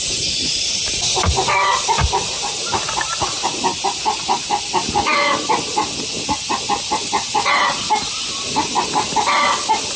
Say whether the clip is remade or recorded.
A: recorded